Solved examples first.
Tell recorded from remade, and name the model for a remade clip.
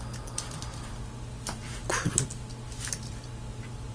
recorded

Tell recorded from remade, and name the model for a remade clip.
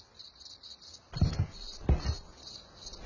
recorded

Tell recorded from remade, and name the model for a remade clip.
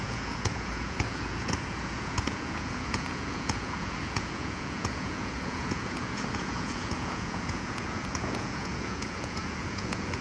remade, vocoder, Vocos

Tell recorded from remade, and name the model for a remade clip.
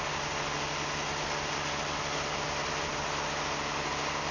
recorded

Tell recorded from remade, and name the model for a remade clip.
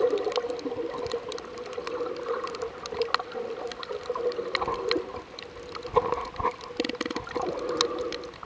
recorded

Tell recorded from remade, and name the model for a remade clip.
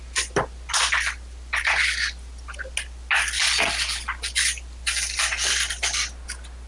recorded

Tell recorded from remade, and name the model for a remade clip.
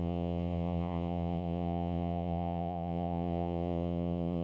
remade, vocoder, Vocos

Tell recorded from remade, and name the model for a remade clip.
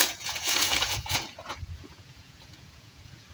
remade, vocoder, Vocos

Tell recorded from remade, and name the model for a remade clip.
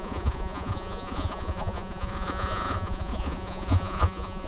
remade, vocoder, Vocos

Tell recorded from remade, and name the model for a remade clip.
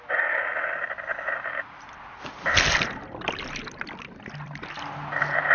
recorded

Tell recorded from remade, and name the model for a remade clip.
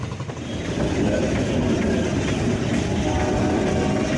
recorded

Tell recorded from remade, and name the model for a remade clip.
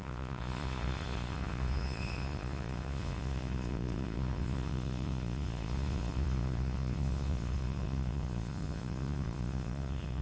remade, vocoder, Vocos